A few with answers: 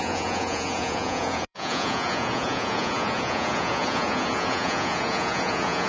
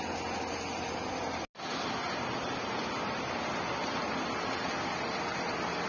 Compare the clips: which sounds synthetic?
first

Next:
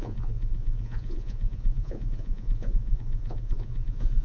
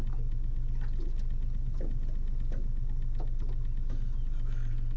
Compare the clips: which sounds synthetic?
first